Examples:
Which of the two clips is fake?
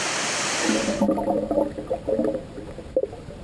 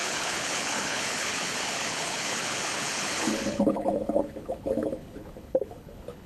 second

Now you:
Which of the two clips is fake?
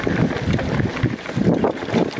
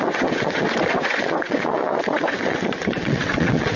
second